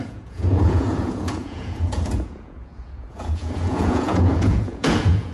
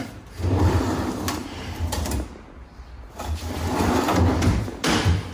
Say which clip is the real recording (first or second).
second